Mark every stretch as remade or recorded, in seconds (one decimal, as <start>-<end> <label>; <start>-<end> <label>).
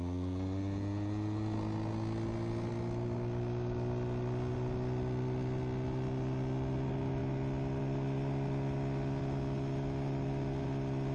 0.0-11.1 recorded